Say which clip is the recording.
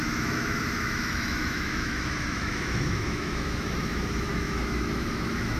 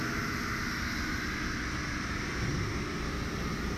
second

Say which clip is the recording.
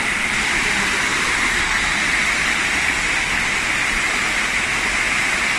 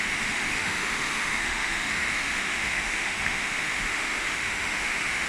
first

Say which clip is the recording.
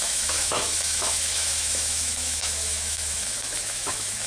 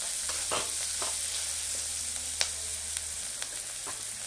second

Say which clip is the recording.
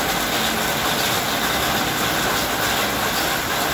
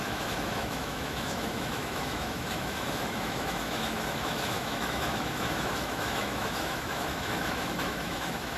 first